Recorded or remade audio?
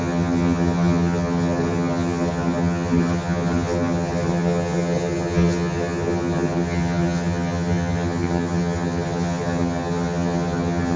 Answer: remade